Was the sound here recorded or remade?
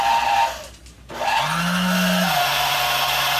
recorded